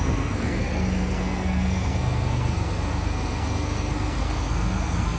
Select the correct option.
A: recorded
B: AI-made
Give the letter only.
B